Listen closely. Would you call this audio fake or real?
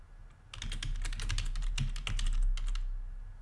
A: real